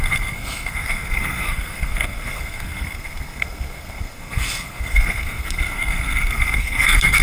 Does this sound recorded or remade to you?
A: remade